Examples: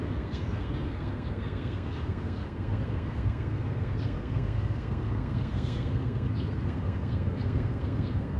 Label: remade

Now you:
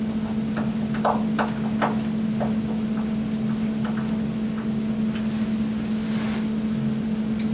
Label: recorded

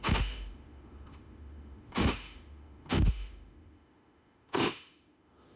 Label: remade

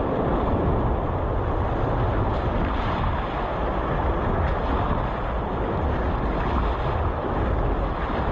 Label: recorded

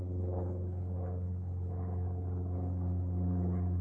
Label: remade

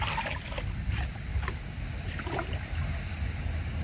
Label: recorded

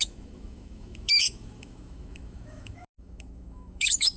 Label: remade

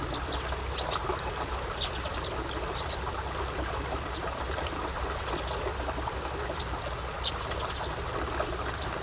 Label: recorded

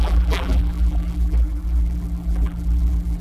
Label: remade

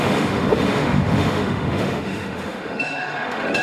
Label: remade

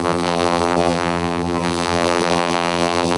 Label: remade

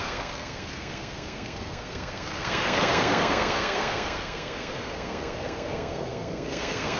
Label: remade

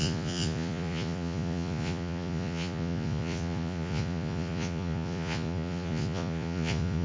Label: remade